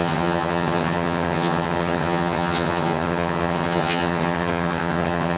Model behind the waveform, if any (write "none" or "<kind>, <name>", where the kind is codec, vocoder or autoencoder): vocoder, HiFi-GAN